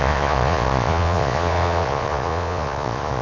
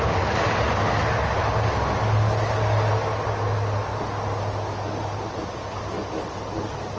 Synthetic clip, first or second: first